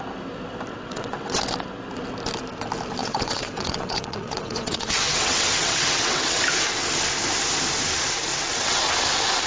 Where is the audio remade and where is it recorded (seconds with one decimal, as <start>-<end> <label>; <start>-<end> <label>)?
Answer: 0.0-0.7 recorded; 0.7-1.4 remade; 1.4-3.0 recorded; 3.0-6.4 remade; 6.4-8.3 recorded; 8.3-8.8 remade; 8.8-9.5 recorded